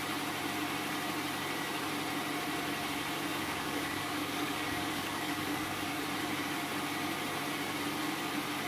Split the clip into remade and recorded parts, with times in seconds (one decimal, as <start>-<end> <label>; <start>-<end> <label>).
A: 0.0-3.3 recorded; 3.3-6.0 remade; 6.0-8.7 recorded